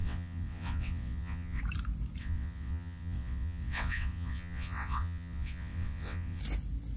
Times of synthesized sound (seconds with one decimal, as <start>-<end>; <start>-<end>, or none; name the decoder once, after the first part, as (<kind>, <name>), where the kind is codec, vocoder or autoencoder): 0.0-1.6 (vocoder, WaveNeXt); 2.2-6.4